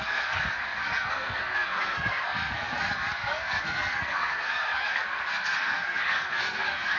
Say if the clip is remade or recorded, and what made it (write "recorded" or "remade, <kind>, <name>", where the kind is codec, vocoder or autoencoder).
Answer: remade, codec, SNAC